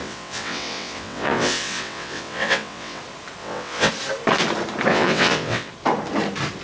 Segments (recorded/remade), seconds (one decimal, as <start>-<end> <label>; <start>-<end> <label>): 0.0-3.0 remade; 3.0-3.4 recorded; 3.4-3.9 remade; 3.9-4.9 recorded; 4.9-5.7 remade; 5.7-6.6 recorded